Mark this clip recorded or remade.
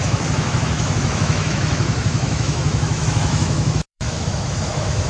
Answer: remade